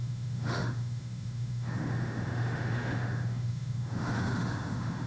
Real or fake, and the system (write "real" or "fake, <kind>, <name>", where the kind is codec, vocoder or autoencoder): fake, autoencoder, DAC-VAE